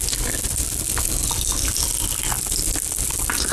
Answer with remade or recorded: recorded